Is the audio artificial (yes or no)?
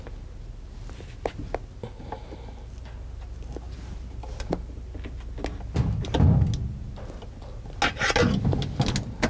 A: no